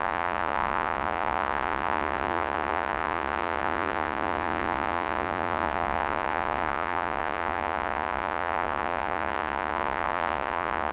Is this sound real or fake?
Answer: fake